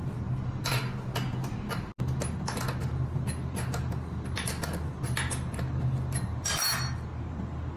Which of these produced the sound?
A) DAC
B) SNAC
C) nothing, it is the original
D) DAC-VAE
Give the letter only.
C